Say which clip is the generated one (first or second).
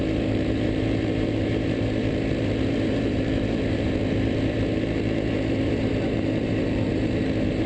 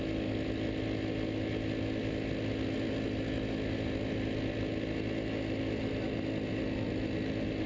first